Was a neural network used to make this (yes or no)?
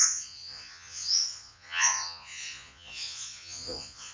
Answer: yes